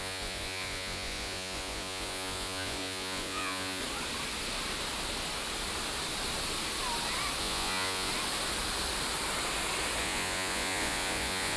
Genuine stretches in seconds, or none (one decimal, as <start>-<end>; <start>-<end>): 3.8-7.4; 8.1-10.0